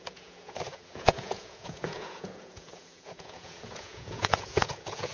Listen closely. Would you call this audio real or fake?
fake